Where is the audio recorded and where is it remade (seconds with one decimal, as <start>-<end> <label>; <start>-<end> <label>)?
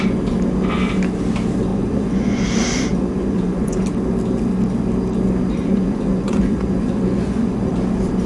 0.0-1.7 recorded; 1.7-2.4 remade; 2.4-2.9 recorded; 2.9-3.8 remade; 3.8-5.6 recorded; 5.6-7.7 remade; 7.7-8.3 recorded